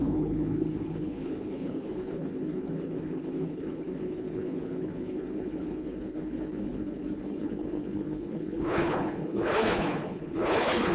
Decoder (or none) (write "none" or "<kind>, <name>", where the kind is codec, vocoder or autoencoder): codec, HILCodec